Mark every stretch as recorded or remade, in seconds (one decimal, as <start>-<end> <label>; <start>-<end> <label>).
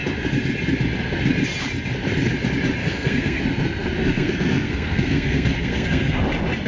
0.0-2.8 recorded; 2.8-3.4 remade; 3.4-4.0 recorded; 4.0-6.2 remade; 6.2-6.7 recorded